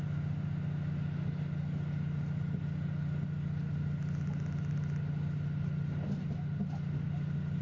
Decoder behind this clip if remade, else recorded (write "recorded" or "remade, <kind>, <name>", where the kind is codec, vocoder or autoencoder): recorded